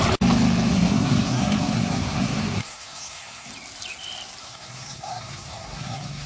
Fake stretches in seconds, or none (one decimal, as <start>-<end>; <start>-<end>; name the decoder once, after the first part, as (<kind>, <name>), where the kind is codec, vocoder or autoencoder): 0.7-3.5 (codec, SNAC); 4.4-6.3